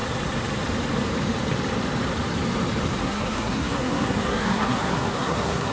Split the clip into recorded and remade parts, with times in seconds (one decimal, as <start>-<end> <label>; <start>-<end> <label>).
0.0-3.0 recorded; 3.0-5.7 remade